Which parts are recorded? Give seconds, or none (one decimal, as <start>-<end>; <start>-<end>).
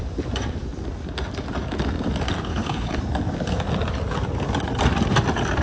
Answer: 0.0-2.5; 3.0-5.6